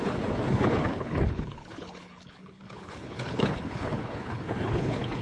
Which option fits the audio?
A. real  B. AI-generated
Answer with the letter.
B